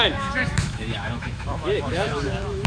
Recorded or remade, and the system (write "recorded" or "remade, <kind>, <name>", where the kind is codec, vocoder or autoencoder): remade, autoencoder, DAC-VAE